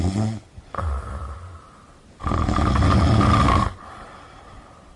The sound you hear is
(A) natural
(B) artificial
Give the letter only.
A